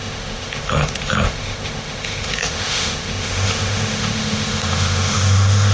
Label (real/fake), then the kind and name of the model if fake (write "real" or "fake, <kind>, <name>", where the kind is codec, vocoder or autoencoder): fake, autoencoder, DAC-VAE